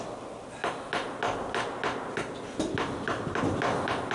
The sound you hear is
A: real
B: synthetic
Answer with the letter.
A